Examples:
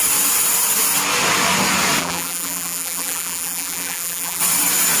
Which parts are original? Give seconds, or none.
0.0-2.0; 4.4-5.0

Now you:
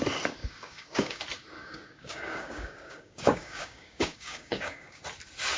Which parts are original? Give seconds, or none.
0.0-0.4; 1.2-1.6; 5.0-5.6

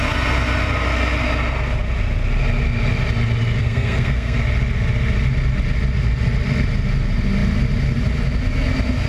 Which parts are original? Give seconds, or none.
0.0-3.6; 4.4-9.1

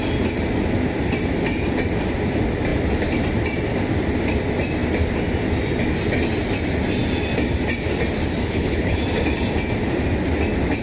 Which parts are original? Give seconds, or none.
0.0-8.4; 9.0-10.8

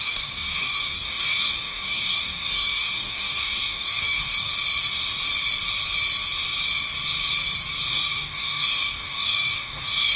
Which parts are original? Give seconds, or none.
4.5-7.9

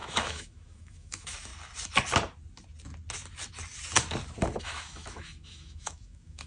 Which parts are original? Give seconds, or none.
1.5-4.6

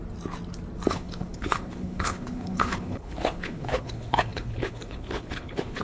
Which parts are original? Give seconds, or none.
0.0-0.9